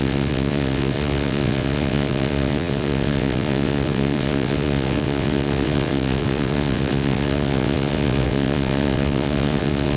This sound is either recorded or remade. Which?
remade